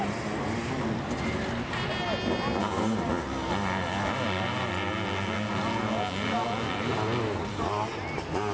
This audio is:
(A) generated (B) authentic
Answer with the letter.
B